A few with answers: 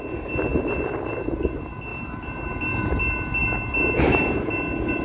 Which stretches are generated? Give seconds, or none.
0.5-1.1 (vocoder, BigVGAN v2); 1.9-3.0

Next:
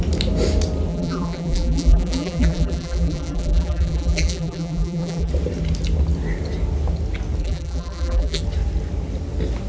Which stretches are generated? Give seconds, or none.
0.9-5.3 (vocoder, BigVGAN v2); 7.4-8.4

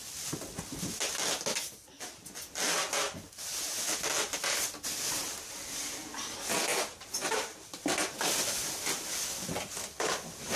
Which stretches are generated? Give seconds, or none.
6.7-9.2 (vocoder, BigVGAN v2)

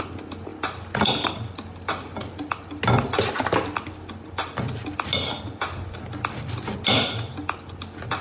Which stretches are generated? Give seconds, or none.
none

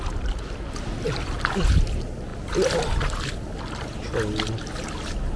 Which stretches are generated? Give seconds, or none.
none

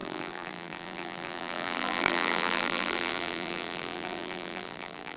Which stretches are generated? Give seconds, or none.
0.0-5.2 (vocoder, BigVGAN v2)